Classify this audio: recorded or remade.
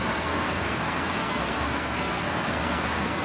remade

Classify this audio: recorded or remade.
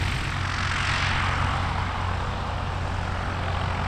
recorded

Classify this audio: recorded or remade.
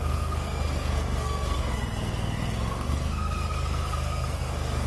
remade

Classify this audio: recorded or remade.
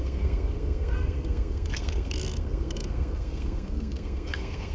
remade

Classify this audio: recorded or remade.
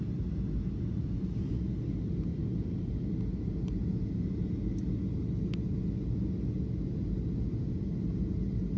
recorded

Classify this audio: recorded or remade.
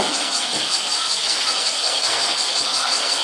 remade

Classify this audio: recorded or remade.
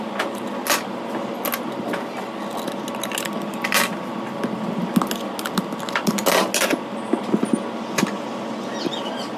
recorded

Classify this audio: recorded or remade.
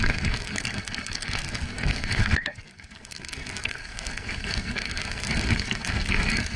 remade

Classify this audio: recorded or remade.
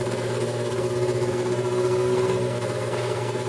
remade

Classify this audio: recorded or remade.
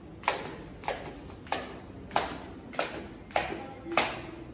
recorded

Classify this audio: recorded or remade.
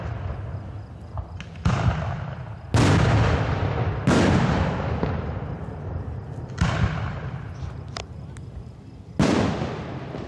recorded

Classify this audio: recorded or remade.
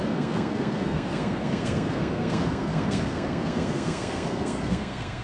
remade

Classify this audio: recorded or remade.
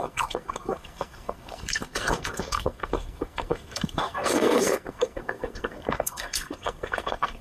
remade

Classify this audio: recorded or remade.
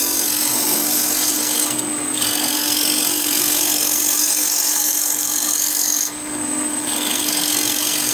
remade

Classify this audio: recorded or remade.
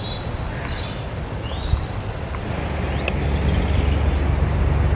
recorded